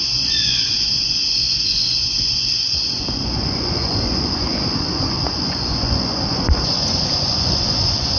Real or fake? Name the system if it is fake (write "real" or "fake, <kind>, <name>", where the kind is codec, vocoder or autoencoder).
fake, vocoder, Vocos